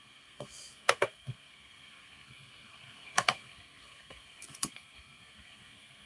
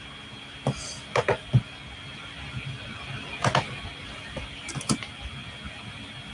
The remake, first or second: first